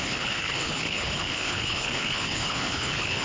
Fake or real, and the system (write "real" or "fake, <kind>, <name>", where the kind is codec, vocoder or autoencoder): fake, codec, HILCodec